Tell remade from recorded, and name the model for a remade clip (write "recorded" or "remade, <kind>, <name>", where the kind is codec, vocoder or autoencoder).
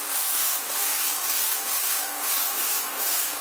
remade, codec, DAC